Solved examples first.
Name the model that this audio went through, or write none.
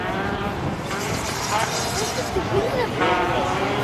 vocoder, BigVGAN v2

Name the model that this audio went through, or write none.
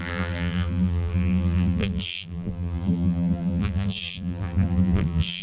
vocoder, BigVGAN v2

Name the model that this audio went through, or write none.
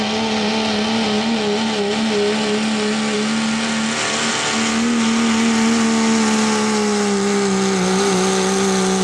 none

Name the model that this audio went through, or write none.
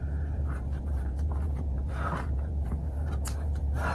vocoder, BigVGAN v2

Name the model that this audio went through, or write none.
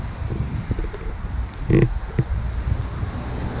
none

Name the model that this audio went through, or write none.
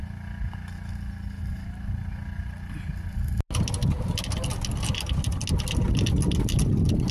none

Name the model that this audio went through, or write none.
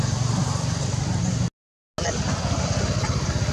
none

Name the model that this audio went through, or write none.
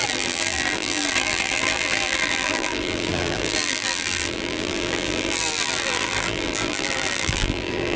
vocoder, BigVGAN v2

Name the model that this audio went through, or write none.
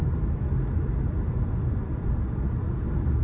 none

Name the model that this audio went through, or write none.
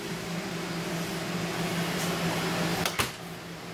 none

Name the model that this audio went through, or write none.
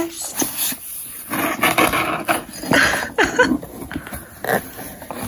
none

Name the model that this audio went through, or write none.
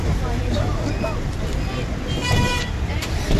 vocoder, BigVGAN v2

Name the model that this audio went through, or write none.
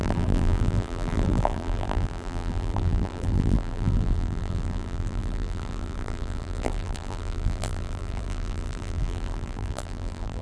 vocoder, BigVGAN v2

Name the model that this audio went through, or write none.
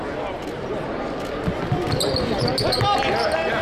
none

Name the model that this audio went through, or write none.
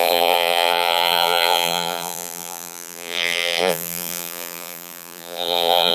vocoder, BigVGAN v2